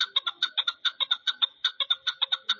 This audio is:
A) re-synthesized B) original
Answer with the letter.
B